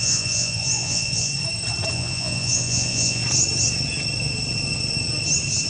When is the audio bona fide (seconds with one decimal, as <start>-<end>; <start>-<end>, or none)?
1.3-1.9; 3.2-5.7